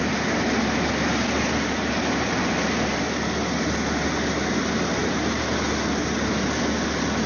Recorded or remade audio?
recorded